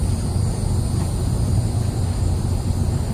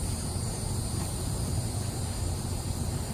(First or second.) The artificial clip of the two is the second